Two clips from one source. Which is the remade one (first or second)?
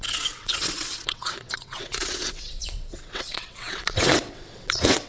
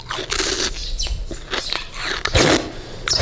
first